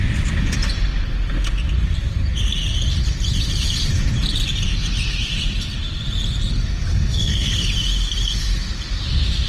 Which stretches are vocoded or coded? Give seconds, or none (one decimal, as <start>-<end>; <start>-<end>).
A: 6.9-7.5